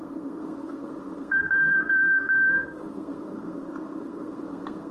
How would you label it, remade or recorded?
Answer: remade